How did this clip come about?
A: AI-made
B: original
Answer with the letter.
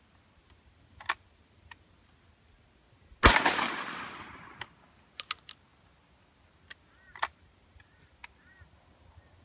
B